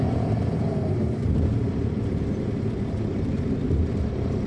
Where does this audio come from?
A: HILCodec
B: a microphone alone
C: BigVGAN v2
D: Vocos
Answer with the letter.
C